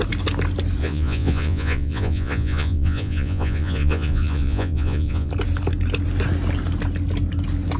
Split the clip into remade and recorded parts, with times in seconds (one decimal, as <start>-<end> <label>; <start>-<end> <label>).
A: 0.0-0.8 recorded; 0.8-5.3 remade; 5.3-7.8 recorded